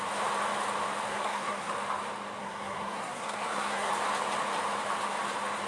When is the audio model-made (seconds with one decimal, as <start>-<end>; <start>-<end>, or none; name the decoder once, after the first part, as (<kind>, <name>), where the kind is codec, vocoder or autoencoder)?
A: 1.1-1.7 (codec, SNAC); 2.4-3.9